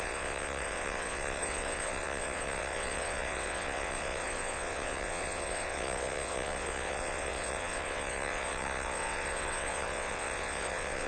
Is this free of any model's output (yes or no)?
no